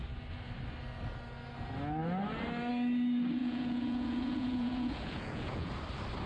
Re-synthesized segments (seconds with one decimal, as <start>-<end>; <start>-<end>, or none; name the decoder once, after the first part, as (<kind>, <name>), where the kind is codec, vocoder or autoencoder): 3.4-5.7 (vocoder, Vocos)